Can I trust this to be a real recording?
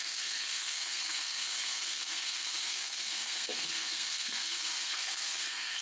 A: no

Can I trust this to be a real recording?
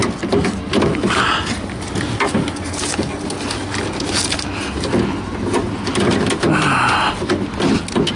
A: yes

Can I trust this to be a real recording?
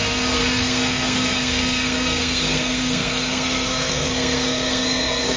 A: no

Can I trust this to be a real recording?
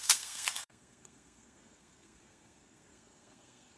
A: no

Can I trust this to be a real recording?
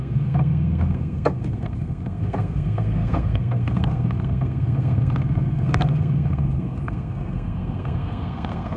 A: no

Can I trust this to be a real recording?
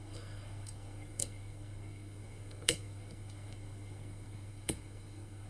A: no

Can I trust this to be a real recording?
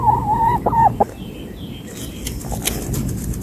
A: yes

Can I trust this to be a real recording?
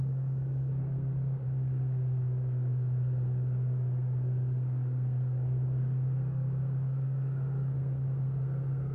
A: no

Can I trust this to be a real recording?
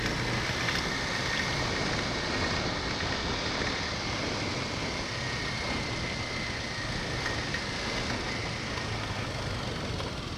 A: yes